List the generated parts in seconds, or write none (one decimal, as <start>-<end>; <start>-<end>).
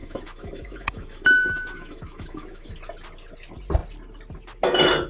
0.0-2.7